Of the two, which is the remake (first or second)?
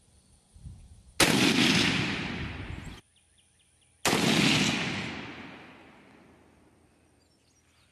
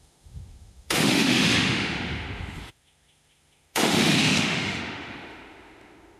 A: second